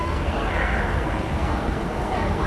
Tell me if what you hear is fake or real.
fake